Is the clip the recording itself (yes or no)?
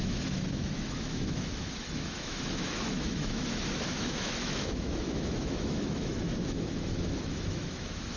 no